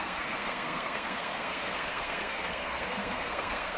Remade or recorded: remade